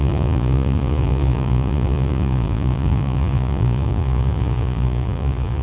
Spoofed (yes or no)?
yes